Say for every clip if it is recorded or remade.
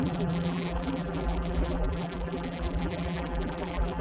remade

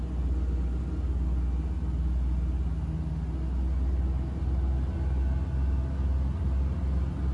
recorded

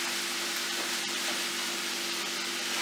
recorded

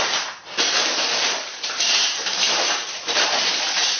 remade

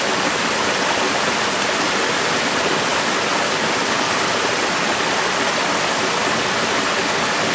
recorded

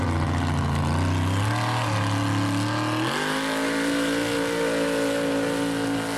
recorded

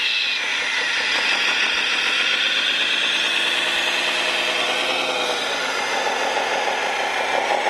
recorded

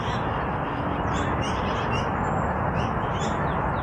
recorded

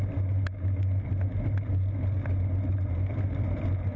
recorded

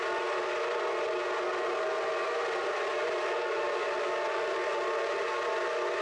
recorded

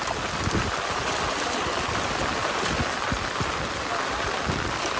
remade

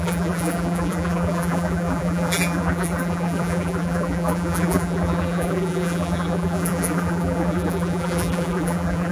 remade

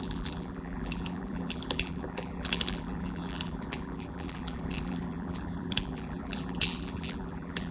remade